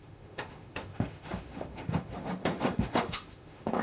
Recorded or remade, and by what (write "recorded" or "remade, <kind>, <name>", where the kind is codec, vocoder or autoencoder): remade, autoencoder, DAC-VAE